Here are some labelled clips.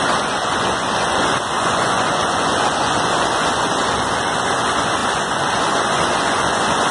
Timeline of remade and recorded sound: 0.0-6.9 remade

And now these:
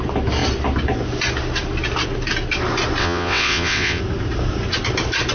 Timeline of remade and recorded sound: 0.0-3.0 recorded; 3.0-4.0 remade; 4.0-5.3 recorded

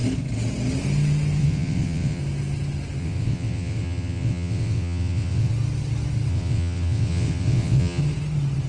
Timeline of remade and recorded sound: 0.0-1.4 recorded; 1.4-2.2 remade; 2.2-3.0 recorded; 3.0-5.5 remade; 5.5-6.3 recorded; 6.3-8.0 remade; 8.0-8.7 recorded

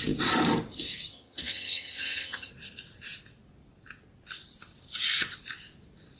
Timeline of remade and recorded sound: 0.0-1.1 recorded; 1.1-2.5 remade; 2.5-6.2 recorded

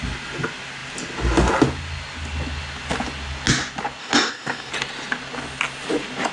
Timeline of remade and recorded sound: 0.0-4.0 recorded; 4.0-4.7 remade; 4.7-6.3 recorded

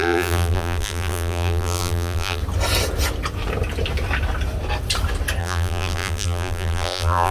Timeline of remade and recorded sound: 0.0-2.4 remade; 2.4-5.4 recorded; 5.4-7.3 remade

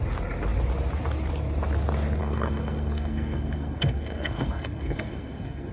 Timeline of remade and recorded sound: 0.0-2.2 recorded; 2.2-5.7 remade

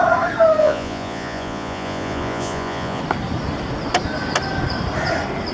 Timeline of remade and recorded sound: 0.0-0.6 recorded; 0.6-3.0 remade; 3.0-5.5 recorded